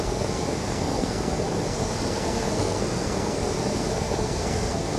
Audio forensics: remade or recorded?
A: remade